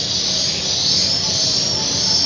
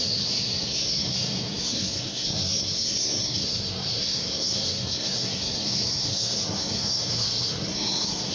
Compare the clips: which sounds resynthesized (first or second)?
second